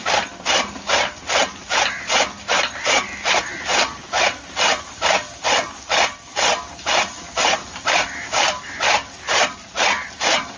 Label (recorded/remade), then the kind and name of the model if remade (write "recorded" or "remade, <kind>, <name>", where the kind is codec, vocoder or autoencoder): recorded